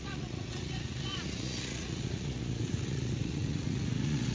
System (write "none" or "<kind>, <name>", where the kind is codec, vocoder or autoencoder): vocoder, Vocos